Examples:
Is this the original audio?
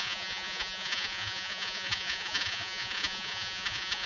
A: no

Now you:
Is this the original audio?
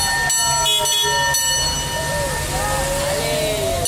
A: yes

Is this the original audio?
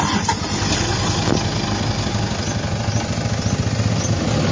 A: yes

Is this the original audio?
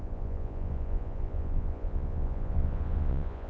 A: no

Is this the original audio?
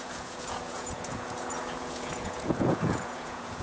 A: no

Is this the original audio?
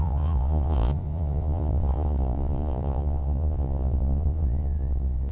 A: no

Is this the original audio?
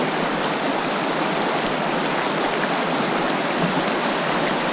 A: yes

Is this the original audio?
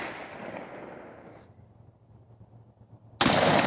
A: yes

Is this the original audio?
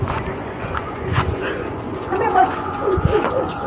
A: no